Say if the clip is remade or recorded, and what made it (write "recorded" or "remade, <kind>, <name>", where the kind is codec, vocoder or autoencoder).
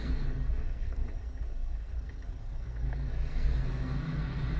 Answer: remade, codec, SNAC